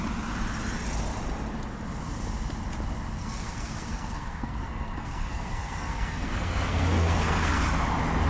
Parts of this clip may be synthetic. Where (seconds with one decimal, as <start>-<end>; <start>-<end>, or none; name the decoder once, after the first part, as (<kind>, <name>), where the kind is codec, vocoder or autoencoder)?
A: 3.2-7.6 (codec, SNAC)